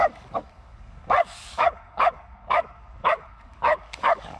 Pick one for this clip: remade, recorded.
remade